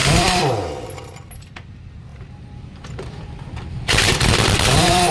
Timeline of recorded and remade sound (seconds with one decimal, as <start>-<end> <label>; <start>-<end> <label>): 0.0-1.3 remade; 1.3-2.1 recorded; 2.1-5.1 remade